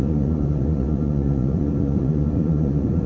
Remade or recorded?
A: remade